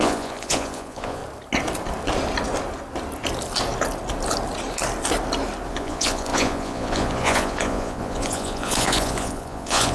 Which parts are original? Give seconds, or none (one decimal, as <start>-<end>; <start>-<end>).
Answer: 1.2-5.7